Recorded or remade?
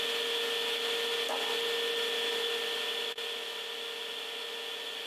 recorded